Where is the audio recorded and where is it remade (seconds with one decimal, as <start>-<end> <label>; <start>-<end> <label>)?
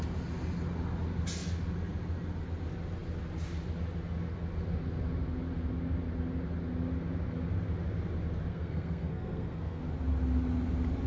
0.0-8.5 recorded; 8.5-9.8 remade; 9.8-11.1 recorded